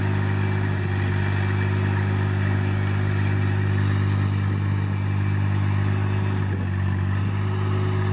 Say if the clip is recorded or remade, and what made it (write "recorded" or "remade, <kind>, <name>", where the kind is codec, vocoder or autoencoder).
recorded